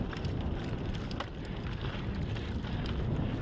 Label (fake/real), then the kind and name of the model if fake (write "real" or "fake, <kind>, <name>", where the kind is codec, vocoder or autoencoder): real